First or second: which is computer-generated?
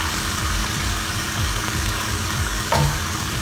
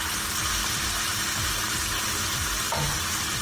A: first